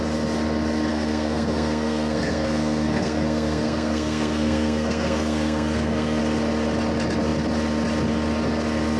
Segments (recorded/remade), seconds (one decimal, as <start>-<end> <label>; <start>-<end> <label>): 0.0-0.9 recorded; 0.9-6.2 remade; 6.2-9.0 recorded